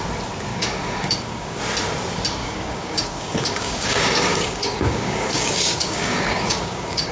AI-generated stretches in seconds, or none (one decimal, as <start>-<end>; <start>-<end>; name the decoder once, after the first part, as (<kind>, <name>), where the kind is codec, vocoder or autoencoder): 0.5-1.6 (codec, DAC); 2.4-7.1